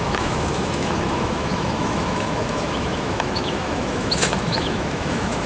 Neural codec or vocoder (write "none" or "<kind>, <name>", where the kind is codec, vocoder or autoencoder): autoencoder, DAC-VAE